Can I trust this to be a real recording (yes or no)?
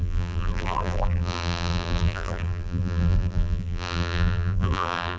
no